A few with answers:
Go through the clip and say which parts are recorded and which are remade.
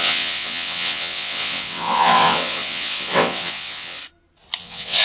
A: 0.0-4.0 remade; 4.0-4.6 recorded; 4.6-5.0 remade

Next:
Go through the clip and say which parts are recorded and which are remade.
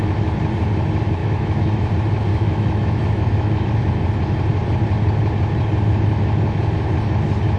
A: 0.0-1.2 recorded; 1.2-1.9 remade; 1.9-2.3 recorded; 2.3-3.7 remade; 3.7-7.6 recorded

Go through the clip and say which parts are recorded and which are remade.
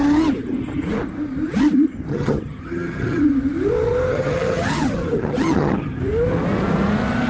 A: 0.0-2.1 recorded; 2.1-3.2 remade; 3.2-4.1 recorded; 4.1-6.0 remade; 6.0-7.3 recorded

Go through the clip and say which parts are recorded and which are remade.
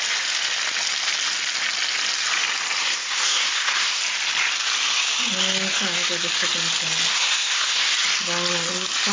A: 0.0-2.8 recorded; 2.8-4.0 remade; 4.0-7.1 recorded; 7.1-7.9 remade; 7.9-9.1 recorded